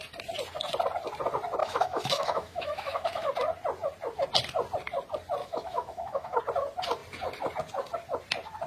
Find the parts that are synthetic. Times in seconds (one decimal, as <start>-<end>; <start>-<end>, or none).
1.6-3.3; 5.4-6.4